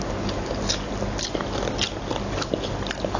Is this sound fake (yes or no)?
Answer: no